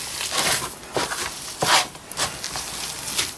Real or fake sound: real